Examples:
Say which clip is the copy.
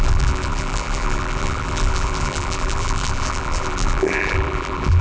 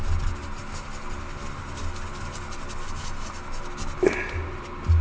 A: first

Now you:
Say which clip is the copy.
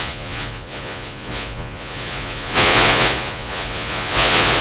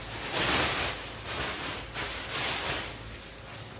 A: first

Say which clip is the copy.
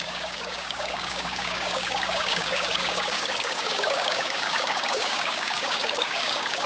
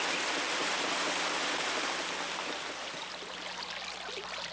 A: first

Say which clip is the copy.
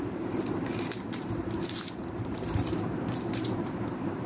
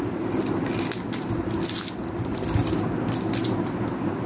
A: first